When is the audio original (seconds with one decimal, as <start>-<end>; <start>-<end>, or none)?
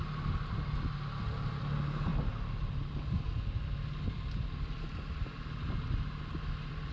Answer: 0.0-6.9